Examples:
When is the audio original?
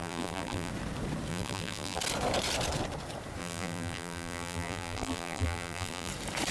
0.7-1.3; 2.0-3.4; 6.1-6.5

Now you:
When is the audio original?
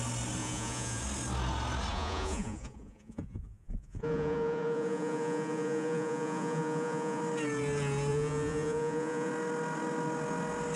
0.0-0.4; 1.0-1.9; 7.2-8.1; 9.3-10.8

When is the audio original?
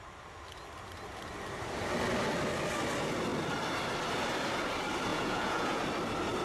0.0-5.1; 5.8-6.4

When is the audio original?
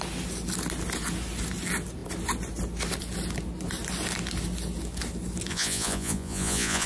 0.0-5.5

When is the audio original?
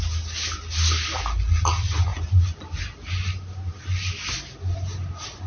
0.0-2.1; 5.1-5.5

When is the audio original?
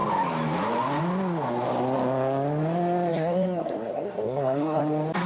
0.0-3.1; 4.8-5.3